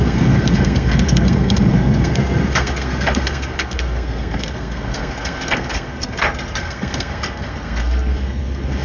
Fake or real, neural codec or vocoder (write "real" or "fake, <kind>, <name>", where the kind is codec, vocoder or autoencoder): fake, codec, SNAC